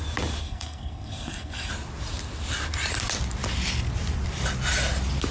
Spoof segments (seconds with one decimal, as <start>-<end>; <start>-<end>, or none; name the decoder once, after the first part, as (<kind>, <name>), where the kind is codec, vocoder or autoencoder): 0.4-1.7 (codec, SNAC)